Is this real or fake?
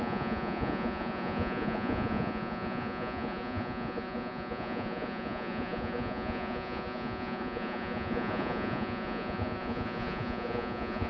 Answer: fake